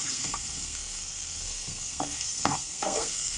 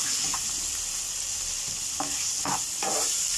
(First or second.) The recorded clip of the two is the second